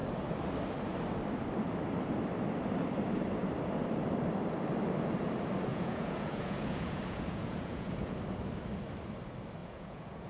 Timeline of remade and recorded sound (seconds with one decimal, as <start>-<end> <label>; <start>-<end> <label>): 0.0-5.7 recorded; 5.7-8.2 remade; 8.2-9.6 recorded; 9.6-10.3 remade